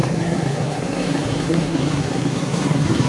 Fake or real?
fake